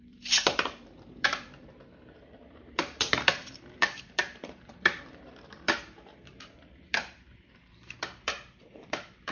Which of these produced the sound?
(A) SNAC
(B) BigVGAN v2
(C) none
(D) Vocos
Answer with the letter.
B